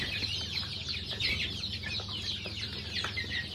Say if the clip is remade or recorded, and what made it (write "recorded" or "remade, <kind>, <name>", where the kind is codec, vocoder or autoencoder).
recorded